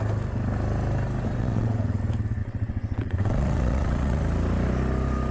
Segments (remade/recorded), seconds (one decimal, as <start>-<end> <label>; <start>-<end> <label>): 0.0-1.4 recorded; 1.4-2.0 remade; 2.0-2.4 recorded; 2.4-4.2 remade; 4.2-5.3 recorded